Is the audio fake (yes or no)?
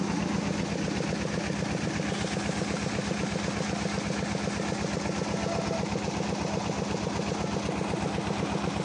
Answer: no